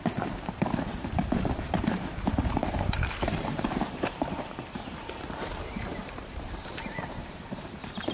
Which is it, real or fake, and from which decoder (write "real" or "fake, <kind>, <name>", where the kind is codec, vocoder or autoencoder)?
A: fake, vocoder, BigVGAN v2